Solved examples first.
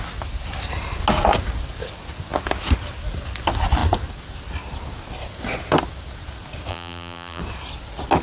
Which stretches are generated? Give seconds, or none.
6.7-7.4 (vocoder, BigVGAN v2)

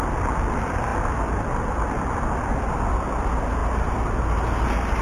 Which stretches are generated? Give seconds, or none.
none

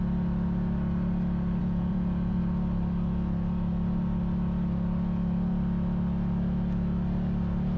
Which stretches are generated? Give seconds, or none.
1.6-2.4 (vocoder, Vocos)

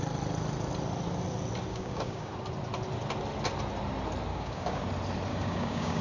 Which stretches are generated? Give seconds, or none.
1.7-2.3 (codec, DAC); 4.3-4.8; 5.3-6.0

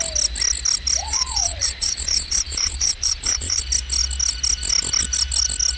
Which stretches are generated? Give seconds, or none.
1.0-3.6 (vocoder, Vocos)

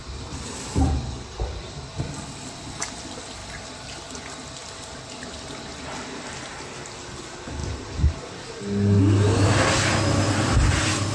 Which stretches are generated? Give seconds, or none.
none